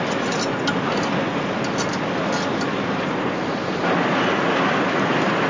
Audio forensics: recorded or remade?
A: recorded